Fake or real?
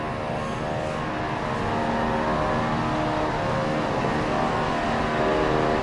real